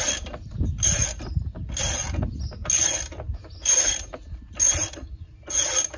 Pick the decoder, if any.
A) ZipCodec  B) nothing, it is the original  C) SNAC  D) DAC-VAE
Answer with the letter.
B